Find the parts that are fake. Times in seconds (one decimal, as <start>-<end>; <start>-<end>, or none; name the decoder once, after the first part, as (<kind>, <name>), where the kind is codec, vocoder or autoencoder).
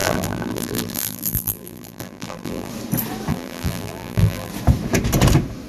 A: 0.0-2.7 (vocoder, BigVGAN v2); 3.3-4.5